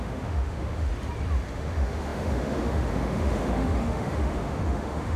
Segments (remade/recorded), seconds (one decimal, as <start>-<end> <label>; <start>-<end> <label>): 0.0-0.9 remade; 0.9-1.5 recorded; 1.5-5.2 remade